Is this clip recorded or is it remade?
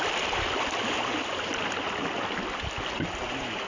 remade